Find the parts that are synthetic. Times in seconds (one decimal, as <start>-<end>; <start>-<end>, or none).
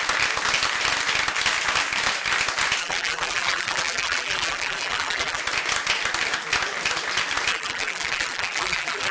2.8-5.4; 7.5-9.1